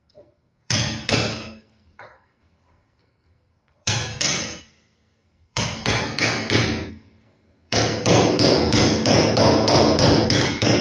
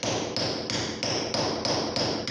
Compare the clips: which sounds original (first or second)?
second